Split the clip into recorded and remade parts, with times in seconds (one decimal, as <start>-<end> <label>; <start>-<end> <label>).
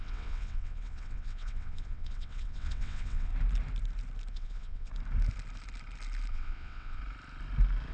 0.0-3.3 remade; 3.3-4.3 recorded; 4.3-4.9 remade; 4.9-6.3 recorded; 6.3-7.0 remade; 7.0-7.9 recorded